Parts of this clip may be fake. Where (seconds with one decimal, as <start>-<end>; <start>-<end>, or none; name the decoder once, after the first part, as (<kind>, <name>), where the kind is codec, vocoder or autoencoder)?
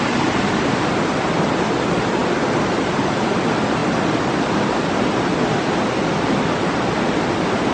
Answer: none